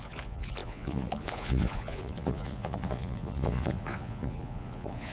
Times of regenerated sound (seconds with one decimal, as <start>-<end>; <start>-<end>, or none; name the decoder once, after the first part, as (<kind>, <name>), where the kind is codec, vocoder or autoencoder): 0.0-5.1 (vocoder, Vocos)